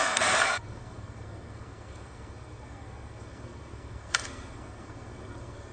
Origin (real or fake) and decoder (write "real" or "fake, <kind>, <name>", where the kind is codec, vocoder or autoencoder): fake, codec, SNAC